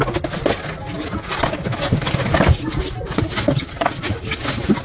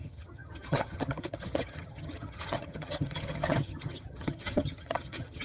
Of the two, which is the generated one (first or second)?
second